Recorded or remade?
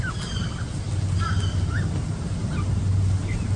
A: recorded